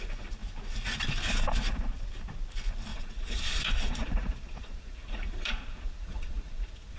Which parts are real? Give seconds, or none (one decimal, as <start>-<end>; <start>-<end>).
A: 0.0-2.9